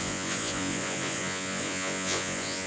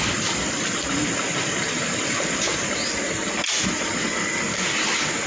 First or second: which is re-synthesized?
first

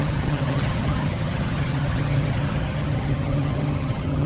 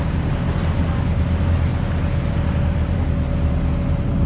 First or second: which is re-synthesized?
first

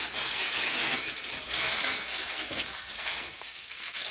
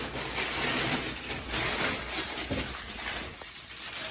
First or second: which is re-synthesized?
first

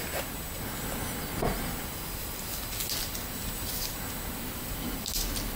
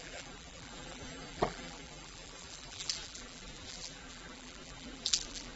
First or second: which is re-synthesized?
second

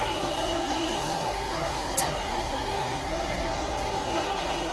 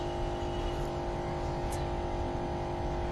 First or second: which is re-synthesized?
first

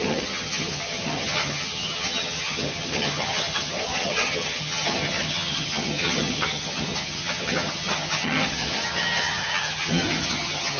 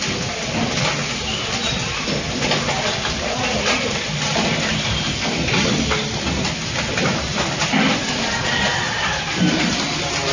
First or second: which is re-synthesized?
first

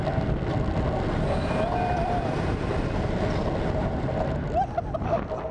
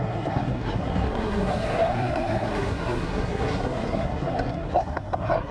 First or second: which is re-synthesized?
second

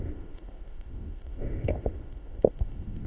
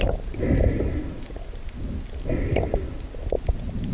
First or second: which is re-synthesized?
first